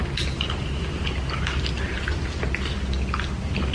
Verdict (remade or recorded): recorded